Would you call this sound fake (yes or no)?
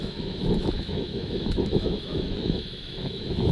yes